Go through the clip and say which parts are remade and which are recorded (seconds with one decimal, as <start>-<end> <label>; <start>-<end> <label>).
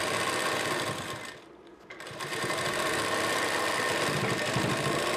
0.0-5.2 recorded